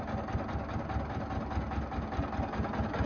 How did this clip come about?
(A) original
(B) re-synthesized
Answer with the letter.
A